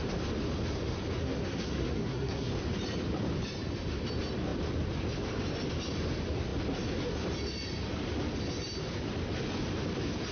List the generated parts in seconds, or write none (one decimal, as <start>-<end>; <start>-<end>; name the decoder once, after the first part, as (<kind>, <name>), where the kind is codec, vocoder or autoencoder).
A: 1.2-2.5 (codec, SNAC)